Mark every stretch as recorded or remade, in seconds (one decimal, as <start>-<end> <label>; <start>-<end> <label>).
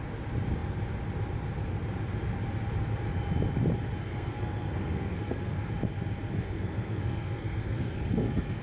0.0-4.1 recorded; 4.1-5.7 remade; 5.7-6.4 recorded; 6.4-8.6 remade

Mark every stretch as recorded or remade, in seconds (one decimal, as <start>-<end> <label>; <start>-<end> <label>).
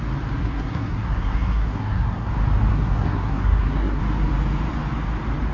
0.0-0.4 recorded; 0.4-2.3 remade; 2.3-2.7 recorded; 2.7-4.0 remade; 4.0-5.5 recorded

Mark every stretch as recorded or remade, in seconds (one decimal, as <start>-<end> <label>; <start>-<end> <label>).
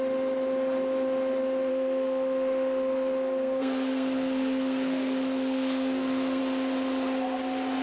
0.0-1.7 recorded; 1.7-6.4 remade; 6.4-7.8 recorded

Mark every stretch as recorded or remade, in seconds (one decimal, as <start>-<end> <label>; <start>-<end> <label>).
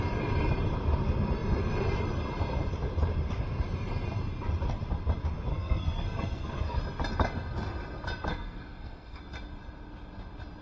0.0-5.5 recorded; 5.5-6.8 remade; 6.8-8.3 recorded; 8.3-9.2 remade; 9.2-10.6 recorded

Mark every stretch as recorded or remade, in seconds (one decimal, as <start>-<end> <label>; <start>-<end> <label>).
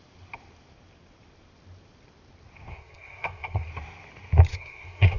0.0-2.7 recorded; 2.7-3.7 remade; 3.7-4.5 recorded; 4.5-5.2 remade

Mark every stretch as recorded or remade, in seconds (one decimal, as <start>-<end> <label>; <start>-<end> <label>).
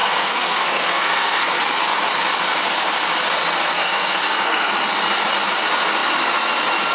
0.0-1.6 remade; 1.6-3.8 recorded; 3.8-4.7 remade; 4.7-6.9 recorded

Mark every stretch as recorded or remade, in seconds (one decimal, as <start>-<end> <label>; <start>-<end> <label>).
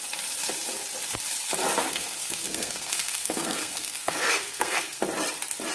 0.0-1.9 recorded; 1.9-5.0 remade; 5.0-5.7 recorded